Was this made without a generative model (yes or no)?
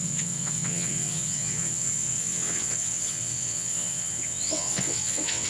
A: no